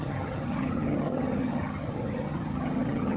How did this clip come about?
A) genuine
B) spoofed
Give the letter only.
B